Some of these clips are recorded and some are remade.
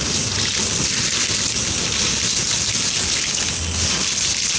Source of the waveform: recorded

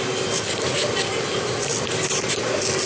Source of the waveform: recorded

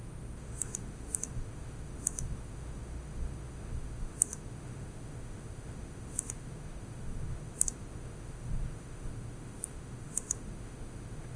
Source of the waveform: remade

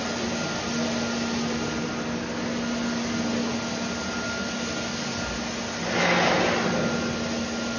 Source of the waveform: recorded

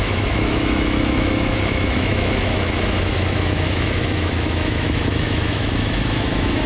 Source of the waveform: remade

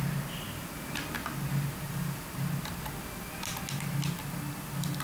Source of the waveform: recorded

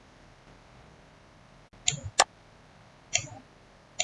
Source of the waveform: recorded